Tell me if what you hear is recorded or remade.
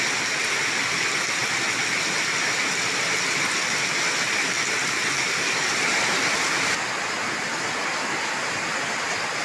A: recorded